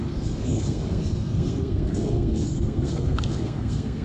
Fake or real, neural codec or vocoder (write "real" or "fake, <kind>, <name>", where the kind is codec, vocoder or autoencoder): fake, codec, SNAC